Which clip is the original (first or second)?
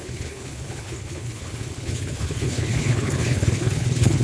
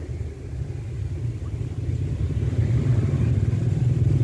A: second